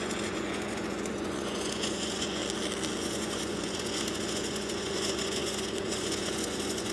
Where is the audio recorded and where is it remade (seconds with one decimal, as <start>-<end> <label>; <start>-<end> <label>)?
0.0-2.4 remade; 2.4-3.0 recorded; 3.0-6.9 remade